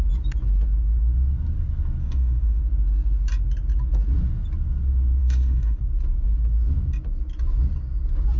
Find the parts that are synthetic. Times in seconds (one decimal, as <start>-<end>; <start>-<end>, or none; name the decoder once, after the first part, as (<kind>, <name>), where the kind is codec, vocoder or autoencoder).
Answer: 2.0-2.6 (autoencoder, DAC-VAE); 5.2-5.8